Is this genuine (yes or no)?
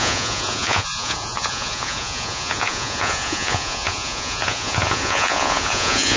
no